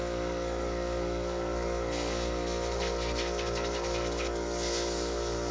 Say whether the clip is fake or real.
fake